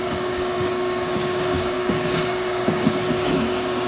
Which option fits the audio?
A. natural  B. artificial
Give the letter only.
B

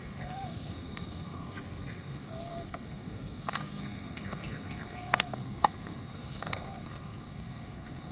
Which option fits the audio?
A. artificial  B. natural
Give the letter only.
A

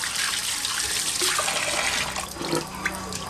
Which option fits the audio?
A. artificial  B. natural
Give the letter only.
B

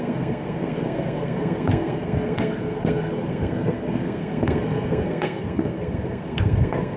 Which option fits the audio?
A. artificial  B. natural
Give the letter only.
A